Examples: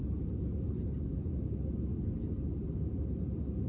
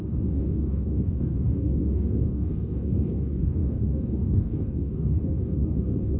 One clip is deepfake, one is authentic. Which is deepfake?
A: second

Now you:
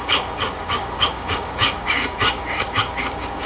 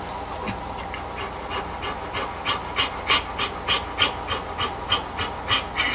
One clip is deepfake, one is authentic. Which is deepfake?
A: first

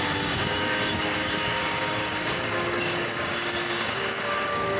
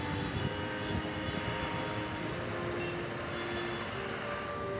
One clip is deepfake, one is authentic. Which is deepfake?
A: first